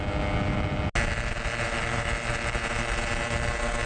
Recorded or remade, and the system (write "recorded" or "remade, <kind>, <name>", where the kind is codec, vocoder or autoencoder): recorded